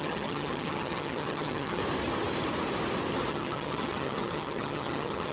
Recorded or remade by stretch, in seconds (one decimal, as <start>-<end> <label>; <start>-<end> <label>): 0.0-1.8 remade; 1.8-3.3 recorded; 3.3-5.3 remade